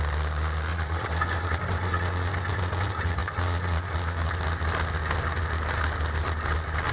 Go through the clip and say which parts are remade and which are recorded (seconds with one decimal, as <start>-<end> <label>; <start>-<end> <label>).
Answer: 0.0-0.7 recorded; 0.7-1.2 remade; 1.2-6.9 recorded